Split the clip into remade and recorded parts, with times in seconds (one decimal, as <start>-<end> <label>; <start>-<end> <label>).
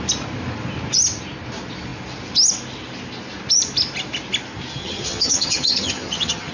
0.0-4.7 recorded; 4.7-6.5 remade